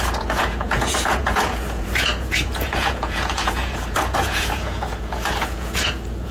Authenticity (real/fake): fake